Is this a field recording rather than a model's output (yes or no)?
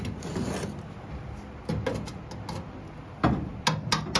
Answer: yes